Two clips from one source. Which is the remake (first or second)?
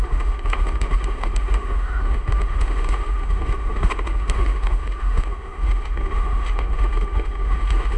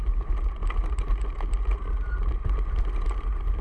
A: first